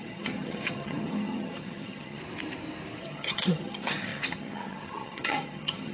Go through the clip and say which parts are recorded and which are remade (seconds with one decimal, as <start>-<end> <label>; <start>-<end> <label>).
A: 0.0-2.2 remade; 2.2-3.0 recorded; 3.0-5.9 remade